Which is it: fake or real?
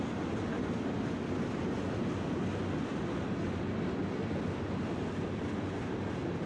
real